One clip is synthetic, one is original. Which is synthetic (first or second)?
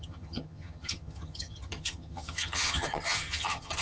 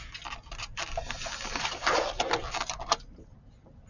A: first